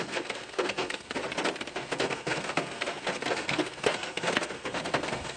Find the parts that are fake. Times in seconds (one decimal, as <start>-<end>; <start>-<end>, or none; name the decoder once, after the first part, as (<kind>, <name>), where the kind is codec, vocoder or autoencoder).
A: 0.0-1.2 (codec, SNAC); 1.7-5.4